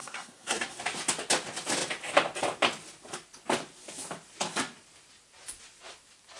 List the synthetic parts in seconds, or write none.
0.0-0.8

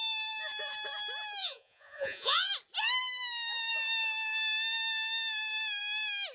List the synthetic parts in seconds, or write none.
1.4-2.5

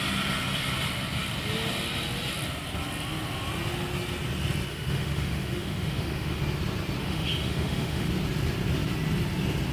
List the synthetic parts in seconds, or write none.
4.7-6.4; 7.0-8.1

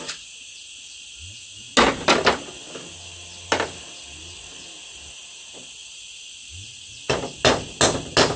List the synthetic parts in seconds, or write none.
none

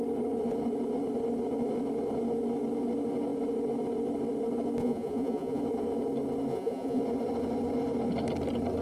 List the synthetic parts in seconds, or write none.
4.8-5.6; 6.5-7.0

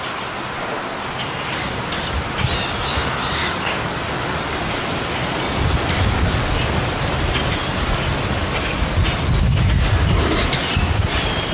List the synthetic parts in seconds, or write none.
none

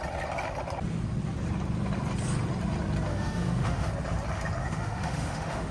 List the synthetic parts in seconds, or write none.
3.1-3.9; 4.6-5.7